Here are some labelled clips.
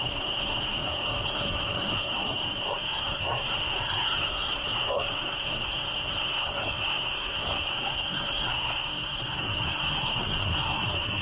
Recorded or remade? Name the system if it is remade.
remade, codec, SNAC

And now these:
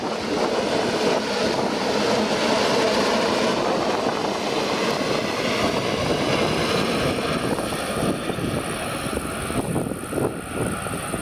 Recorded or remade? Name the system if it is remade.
recorded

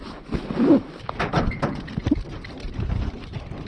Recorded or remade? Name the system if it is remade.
recorded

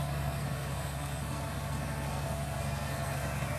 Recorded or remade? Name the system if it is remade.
remade, codec, SNAC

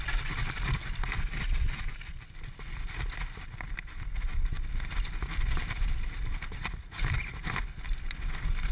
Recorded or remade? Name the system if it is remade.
recorded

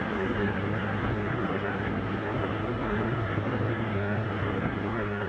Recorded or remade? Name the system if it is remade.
remade, codec, SNAC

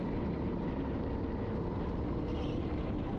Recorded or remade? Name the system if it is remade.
recorded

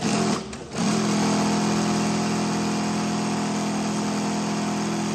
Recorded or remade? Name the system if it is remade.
recorded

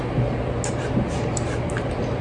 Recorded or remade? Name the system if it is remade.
recorded